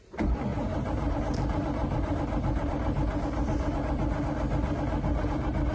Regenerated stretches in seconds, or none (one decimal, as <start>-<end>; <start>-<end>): 0.5-1.2; 1.8-3.9